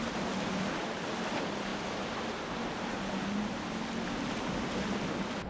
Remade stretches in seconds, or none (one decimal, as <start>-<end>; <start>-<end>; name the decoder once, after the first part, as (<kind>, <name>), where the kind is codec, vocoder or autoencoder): 0.0-1.7 (vocoder, BigVGAN v2); 4.2-5.5